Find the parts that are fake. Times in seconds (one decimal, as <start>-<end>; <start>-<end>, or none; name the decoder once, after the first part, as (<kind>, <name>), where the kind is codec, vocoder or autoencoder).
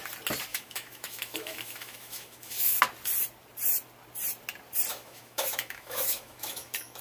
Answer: 0.5-2.8 (autoencoder, DAC-VAE); 4.9-7.0